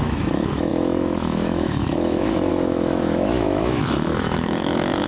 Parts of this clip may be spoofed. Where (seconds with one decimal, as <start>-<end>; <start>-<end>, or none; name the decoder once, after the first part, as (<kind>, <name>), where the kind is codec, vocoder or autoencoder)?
0.0-5.1 (autoencoder, DAC-VAE)